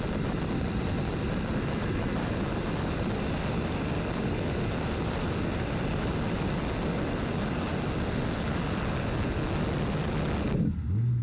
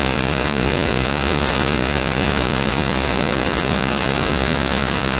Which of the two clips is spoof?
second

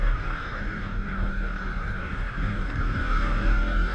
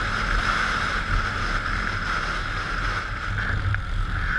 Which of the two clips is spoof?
first